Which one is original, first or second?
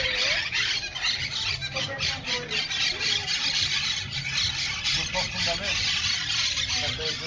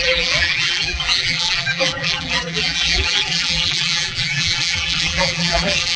first